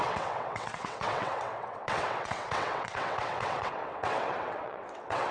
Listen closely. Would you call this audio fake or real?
fake